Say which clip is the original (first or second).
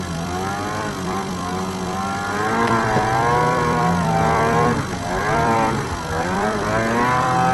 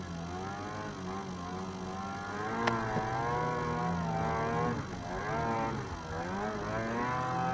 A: second